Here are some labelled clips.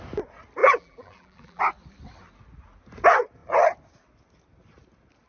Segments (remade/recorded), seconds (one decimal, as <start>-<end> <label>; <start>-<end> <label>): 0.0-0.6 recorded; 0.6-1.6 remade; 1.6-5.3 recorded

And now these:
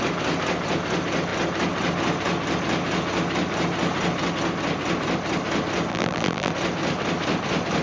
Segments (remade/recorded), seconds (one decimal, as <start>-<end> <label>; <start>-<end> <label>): 0.0-5.9 recorded; 5.9-6.5 remade; 6.5-7.8 recorded

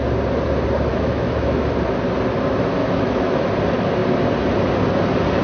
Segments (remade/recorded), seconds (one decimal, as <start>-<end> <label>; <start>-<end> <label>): 0.0-0.9 recorded; 0.9-1.6 remade; 1.6-2.8 recorded; 2.8-3.4 remade; 3.4-5.4 recorded

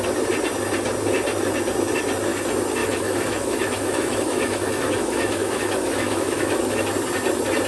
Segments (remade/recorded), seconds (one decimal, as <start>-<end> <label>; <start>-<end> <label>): 0.0-2.8 recorded; 2.8-6.8 remade; 6.8-7.7 recorded

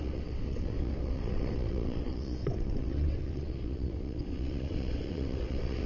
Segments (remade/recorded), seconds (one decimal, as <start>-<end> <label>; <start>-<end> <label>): 0.0-5.9 remade

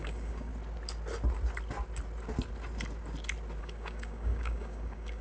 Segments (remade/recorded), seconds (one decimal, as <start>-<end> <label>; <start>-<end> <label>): 0.0-0.5 remade; 0.5-3.6 recorded; 3.6-5.2 remade

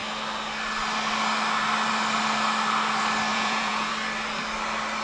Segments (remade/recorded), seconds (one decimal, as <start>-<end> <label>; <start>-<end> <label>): 0.0-3.3 recorded; 3.3-3.9 remade; 3.9-5.0 recorded

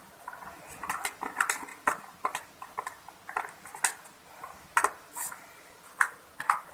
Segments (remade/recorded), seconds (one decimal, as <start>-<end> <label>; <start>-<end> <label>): 0.0-6.7 recorded